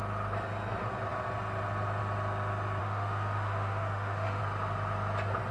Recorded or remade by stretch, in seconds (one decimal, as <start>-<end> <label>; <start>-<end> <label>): 0.0-2.8 recorded; 2.8-4.4 remade; 4.4-5.5 recorded